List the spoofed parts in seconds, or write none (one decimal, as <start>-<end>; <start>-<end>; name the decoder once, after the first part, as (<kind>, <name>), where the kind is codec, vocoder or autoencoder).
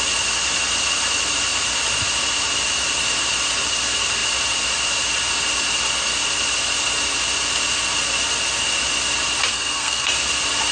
9.5-10.1 (codec, SNAC)